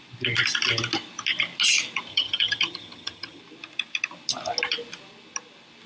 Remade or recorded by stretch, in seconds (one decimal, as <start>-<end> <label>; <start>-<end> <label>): 0.0-2.1 recorded; 2.1-3.4 remade; 3.4-5.9 recorded